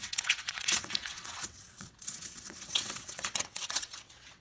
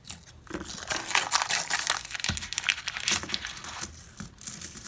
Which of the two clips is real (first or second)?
second